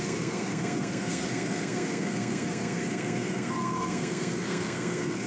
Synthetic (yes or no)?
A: yes